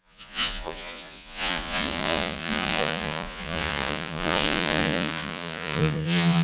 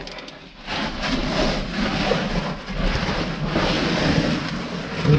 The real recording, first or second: second